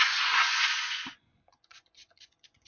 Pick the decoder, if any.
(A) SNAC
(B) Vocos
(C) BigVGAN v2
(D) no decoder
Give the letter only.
B